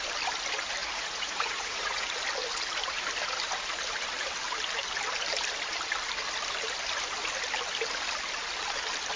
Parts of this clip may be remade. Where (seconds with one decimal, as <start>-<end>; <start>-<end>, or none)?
0.8-2.1